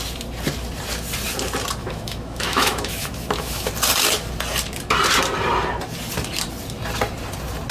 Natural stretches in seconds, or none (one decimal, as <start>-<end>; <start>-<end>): 0.0-1.8; 3.7-7.7